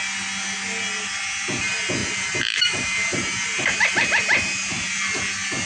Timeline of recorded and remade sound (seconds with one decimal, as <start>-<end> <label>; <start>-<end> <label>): 0.0-2.0 recorded; 2.0-5.2 remade; 5.2-5.7 recorded

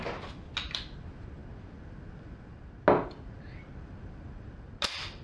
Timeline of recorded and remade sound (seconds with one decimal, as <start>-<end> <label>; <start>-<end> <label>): 0.0-5.2 recorded

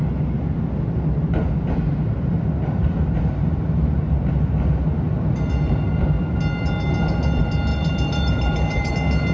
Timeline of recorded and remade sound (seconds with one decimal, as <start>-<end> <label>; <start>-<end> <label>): 0.0-2.8 recorded; 2.8-3.9 remade; 3.9-7.7 recorded; 7.7-8.9 remade; 8.9-9.3 recorded

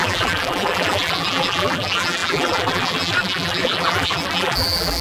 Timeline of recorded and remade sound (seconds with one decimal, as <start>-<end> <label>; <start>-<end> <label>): 0.0-5.0 remade

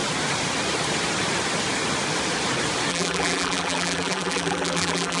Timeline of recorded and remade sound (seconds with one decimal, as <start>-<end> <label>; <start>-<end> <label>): 0.0-2.9 recorded; 2.9-5.2 remade

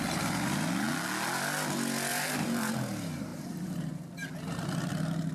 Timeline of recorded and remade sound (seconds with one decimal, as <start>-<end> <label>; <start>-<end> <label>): 0.0-2.1 recorded; 2.1-2.7 remade; 2.7-3.3 recorded; 3.3-4.0 remade; 4.0-5.3 recorded

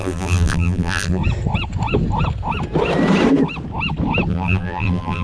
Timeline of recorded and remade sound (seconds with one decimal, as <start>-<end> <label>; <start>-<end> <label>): 0.0-1.2 remade; 1.2-4.3 recorded; 4.3-5.2 remade